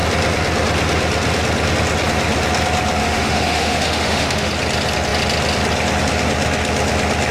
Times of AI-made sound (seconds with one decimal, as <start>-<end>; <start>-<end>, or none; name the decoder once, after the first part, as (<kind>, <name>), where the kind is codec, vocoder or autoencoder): 3.0-4.5 (autoencoder, DAC-VAE)